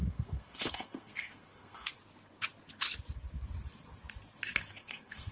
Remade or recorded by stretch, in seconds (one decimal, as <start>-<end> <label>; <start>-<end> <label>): 0.0-1.9 remade; 1.9-4.8 recorded; 4.8-5.3 remade